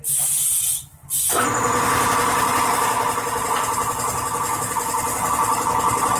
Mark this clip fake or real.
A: real